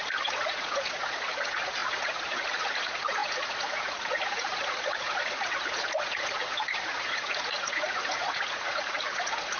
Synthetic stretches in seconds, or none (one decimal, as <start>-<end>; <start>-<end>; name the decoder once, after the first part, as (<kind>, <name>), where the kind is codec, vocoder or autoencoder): 0.0-9.6 (vocoder, Vocos)